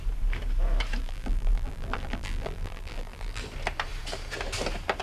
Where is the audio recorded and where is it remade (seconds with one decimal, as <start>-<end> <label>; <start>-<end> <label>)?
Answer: 0.0-1.0 recorded; 1.0-3.4 remade; 3.4-5.0 recorded